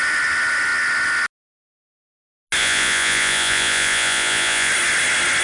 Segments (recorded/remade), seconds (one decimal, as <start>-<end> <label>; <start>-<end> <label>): 0.0-2.6 recorded; 2.6-4.7 remade; 4.7-5.4 recorded